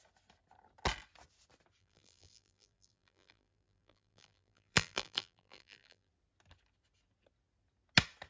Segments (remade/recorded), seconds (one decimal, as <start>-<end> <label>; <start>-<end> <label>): 0.0-1.8 recorded; 1.8-6.1 remade; 6.1-8.3 recorded